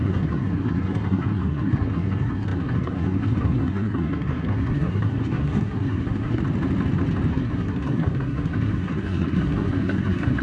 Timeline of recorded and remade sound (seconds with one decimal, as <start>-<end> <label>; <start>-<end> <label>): 0.0-6.4 remade; 6.4-7.3 recorded; 7.3-10.4 remade